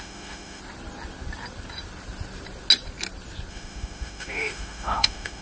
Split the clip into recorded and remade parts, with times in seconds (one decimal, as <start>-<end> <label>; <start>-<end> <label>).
0.0-0.6 remade; 0.6-3.5 recorded; 3.5-5.4 remade

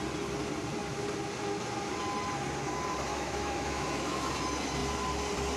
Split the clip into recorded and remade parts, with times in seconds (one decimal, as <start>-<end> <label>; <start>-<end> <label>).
0.0-3.1 recorded; 3.1-4.3 remade; 4.3-5.6 recorded

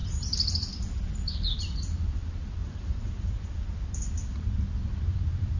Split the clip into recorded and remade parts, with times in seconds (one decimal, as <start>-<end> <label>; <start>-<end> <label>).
0.0-5.6 recorded

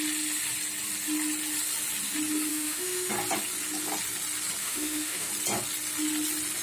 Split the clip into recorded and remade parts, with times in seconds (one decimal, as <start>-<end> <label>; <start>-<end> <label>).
0.0-2.5 recorded; 2.5-3.1 remade; 3.1-4.6 recorded; 4.6-5.3 remade; 5.3-6.6 recorded

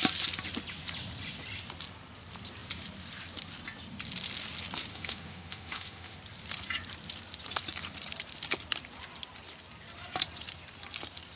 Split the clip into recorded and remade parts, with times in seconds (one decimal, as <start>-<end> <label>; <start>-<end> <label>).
0.0-4.9 recorded; 4.9-6.2 remade; 6.2-11.4 recorded

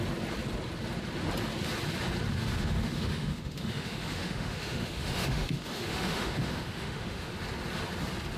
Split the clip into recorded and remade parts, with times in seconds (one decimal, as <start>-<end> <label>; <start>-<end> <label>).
0.0-2.4 recorded; 2.4-7.3 remade; 7.3-8.4 recorded